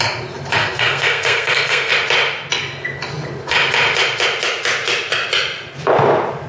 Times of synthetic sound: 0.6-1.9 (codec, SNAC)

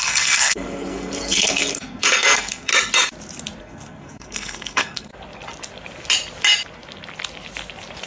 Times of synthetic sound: 0.0-2.7 (codec, SNAC); 3.6-5.1